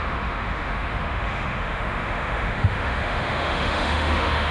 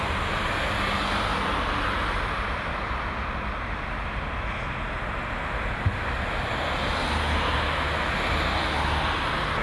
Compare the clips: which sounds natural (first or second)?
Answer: second